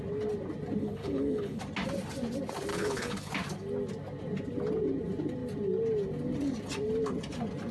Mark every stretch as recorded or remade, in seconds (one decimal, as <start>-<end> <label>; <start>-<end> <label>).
0.0-0.8 recorded; 0.8-1.6 remade; 1.6-2.7 recorded; 2.7-3.3 remade; 3.3-7.7 recorded